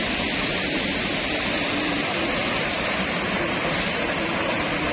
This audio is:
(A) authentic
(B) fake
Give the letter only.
B